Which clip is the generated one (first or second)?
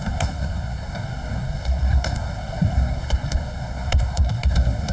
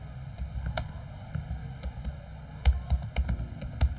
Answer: first